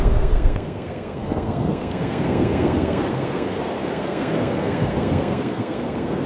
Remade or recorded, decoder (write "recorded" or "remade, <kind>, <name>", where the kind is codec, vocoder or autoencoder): remade, codec, SNAC